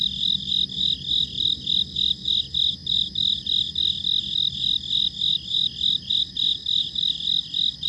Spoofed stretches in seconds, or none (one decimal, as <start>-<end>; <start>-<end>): none